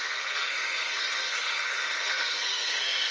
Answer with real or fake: fake